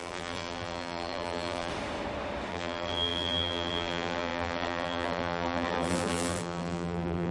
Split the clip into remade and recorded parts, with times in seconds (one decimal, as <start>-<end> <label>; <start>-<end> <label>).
0.0-1.7 remade; 1.7-2.5 recorded; 2.5-7.3 remade